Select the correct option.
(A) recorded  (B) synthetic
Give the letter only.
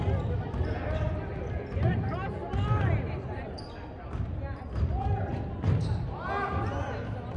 A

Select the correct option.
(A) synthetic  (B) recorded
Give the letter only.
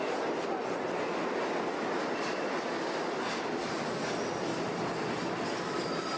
B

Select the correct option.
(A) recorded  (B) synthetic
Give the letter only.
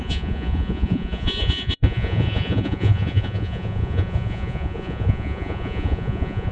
B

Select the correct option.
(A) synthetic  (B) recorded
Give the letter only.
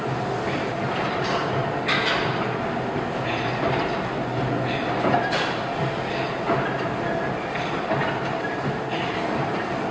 B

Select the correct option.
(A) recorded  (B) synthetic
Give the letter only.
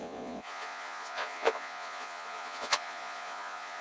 B